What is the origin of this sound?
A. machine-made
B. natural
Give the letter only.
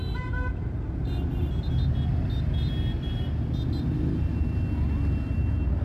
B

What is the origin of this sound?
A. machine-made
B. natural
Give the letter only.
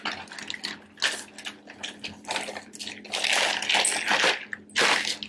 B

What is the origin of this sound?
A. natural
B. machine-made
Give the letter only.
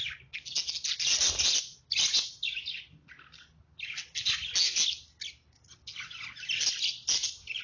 A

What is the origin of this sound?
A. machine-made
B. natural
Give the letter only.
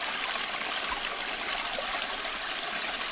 B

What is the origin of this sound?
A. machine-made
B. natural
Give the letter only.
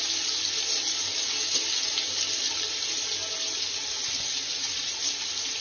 B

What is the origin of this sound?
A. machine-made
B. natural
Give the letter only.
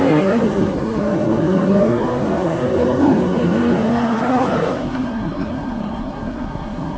A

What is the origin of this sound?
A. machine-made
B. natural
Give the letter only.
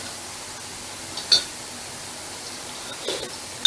B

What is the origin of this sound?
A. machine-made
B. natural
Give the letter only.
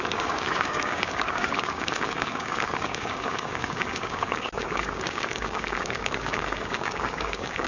A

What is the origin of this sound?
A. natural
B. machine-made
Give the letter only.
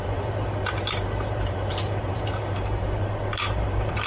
B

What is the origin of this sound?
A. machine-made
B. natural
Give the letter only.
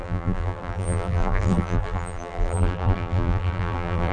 A